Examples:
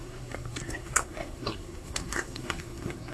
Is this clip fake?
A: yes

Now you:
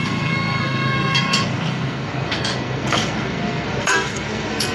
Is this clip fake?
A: yes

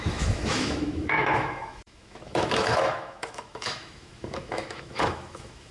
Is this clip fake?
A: yes